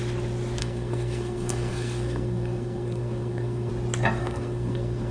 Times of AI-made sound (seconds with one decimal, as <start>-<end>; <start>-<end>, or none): 0.6-3.7; 4.2-5.1